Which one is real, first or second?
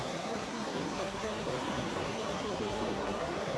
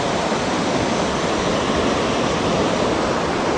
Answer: second